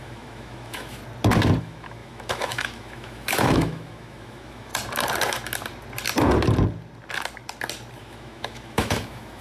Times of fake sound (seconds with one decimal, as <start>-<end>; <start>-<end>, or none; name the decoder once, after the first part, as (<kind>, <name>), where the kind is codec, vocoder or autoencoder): 0.0-1.0 (autoencoder, DAC-VAE); 1.6-4.7; 8.0-9.4